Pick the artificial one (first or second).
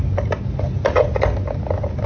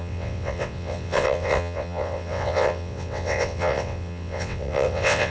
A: second